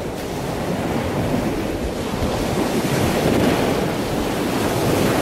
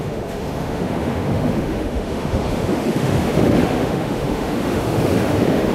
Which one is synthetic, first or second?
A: second